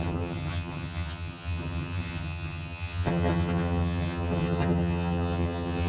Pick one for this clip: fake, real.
fake